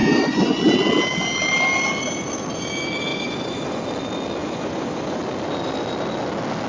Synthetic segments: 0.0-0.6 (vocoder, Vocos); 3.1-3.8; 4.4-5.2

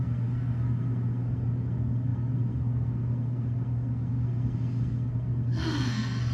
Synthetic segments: 0.0-6.3 (codec, SNAC)

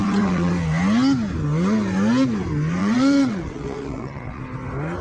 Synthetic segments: 0.0-0.5 (vocoder, WaveNeXt); 2.8-4.4

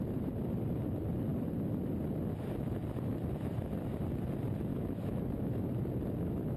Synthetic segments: 4.7-5.7 (autoencoder, DAC-VAE)

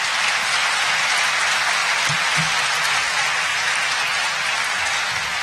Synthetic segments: 3.5-4.8 (vocoder, BigVGAN v2)

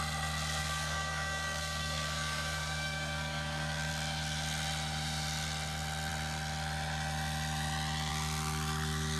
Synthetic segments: 0.6-3.9 (codec, DAC)